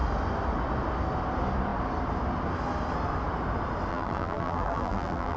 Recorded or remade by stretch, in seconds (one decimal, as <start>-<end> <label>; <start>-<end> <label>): 0.0-3.9 recorded; 3.9-5.4 remade